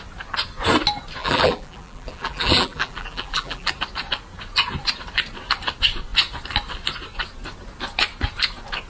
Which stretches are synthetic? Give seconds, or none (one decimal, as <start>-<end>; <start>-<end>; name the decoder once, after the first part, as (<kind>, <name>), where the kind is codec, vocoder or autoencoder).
1.2-3.7 (vocoder, BigVGAN v2)